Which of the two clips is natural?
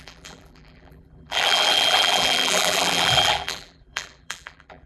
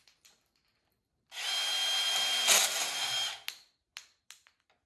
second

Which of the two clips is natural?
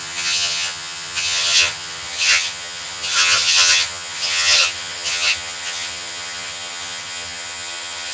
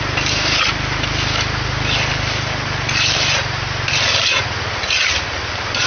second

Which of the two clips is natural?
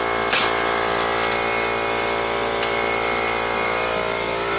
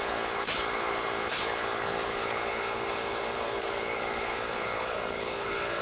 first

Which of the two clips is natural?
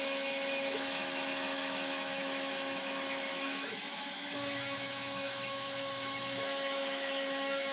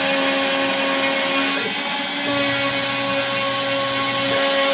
second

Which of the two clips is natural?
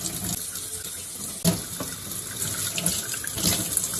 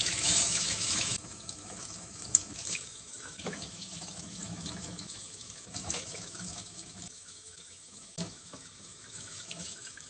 first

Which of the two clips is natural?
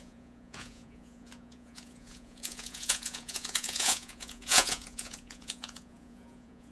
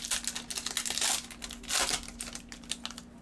second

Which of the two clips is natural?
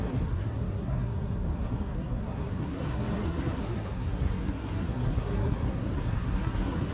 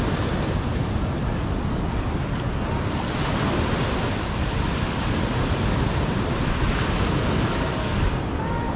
second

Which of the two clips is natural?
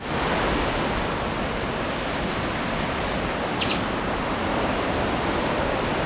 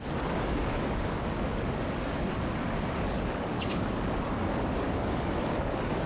first